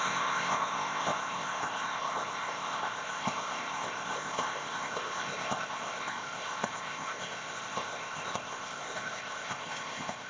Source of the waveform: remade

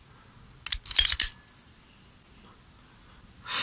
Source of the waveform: recorded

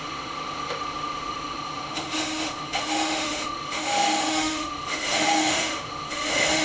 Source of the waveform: remade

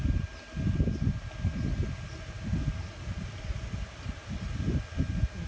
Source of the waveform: recorded